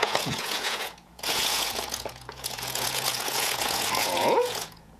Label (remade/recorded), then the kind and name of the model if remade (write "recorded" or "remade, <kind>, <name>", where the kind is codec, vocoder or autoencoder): remade, vocoder, Vocos